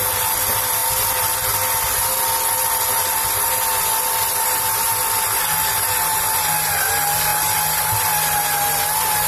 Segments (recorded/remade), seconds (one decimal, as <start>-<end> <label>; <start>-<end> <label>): 0.0-9.3 recorded